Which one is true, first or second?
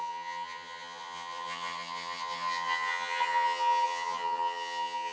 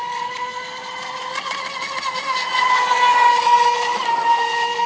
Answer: second